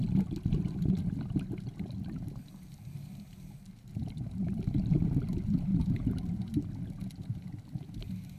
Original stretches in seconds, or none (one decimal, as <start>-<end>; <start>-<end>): 0.0-2.7; 3.7-5.7; 6.4-8.4